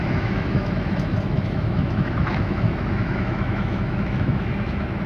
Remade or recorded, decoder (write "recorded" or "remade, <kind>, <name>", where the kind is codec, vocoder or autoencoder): remade, autoencoder, DAC-VAE